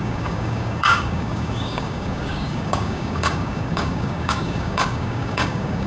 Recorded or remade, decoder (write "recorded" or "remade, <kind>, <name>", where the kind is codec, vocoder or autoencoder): remade, codec, DAC